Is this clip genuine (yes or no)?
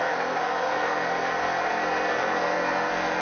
no